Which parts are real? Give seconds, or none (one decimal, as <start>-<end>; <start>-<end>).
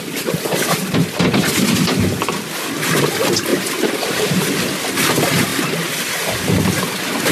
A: 0.0-3.5; 4.4-7.3